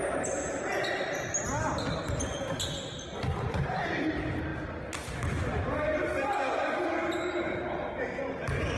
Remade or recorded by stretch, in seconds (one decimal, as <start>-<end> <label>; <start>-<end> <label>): 0.0-8.8 recorded